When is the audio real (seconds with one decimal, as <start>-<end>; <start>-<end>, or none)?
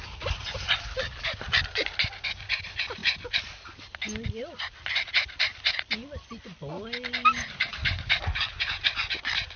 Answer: 0.0-9.6